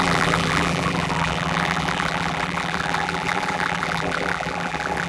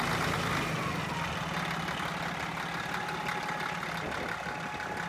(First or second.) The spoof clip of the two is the first